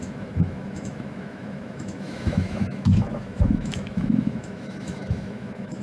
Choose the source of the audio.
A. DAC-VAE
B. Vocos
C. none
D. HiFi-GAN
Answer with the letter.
A